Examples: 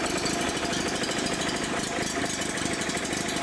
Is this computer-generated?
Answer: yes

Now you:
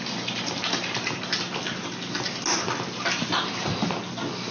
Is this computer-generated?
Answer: no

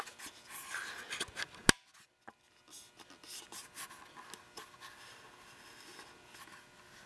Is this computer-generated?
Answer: no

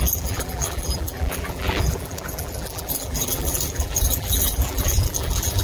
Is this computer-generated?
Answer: yes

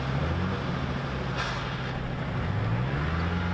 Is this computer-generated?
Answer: no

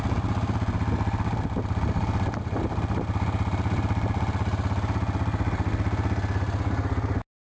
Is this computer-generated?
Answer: no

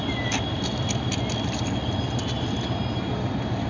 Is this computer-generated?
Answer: no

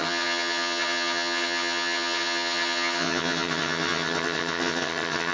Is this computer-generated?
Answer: yes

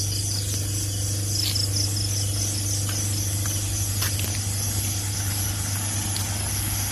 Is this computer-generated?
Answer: no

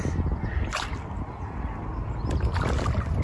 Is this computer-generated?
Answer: no